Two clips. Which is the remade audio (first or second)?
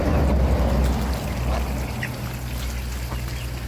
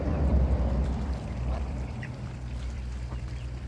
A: second